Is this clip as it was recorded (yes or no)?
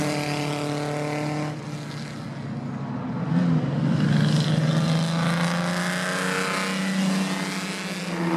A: yes